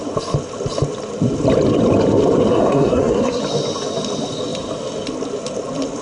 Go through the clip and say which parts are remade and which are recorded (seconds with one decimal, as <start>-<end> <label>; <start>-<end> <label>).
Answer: 0.0-2.5 recorded; 2.5-3.4 remade; 3.4-6.0 recorded